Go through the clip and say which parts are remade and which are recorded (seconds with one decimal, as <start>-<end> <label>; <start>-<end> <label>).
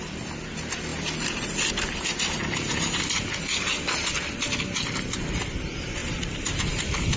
0.0-7.2 recorded